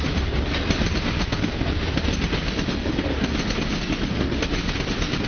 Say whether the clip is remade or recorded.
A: recorded